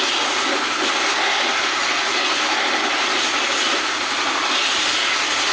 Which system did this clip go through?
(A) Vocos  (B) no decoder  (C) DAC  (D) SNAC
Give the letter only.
B